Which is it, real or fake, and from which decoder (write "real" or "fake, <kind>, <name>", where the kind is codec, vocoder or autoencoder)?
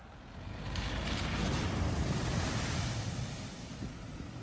real